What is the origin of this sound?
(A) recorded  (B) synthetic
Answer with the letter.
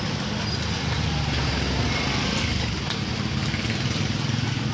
A